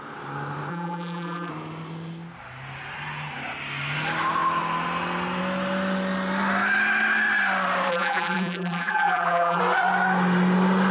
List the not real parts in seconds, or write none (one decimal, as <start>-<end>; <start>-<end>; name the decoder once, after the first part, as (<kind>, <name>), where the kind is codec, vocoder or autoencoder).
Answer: 0.7-1.5 (vocoder, BigVGAN v2); 7.9-9.6